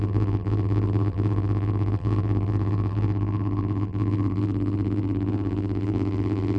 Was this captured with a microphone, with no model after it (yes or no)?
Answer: no